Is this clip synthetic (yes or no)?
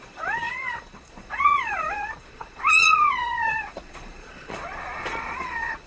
yes